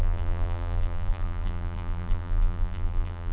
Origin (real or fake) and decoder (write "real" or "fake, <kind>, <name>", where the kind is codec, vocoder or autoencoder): fake, vocoder, BigVGAN v2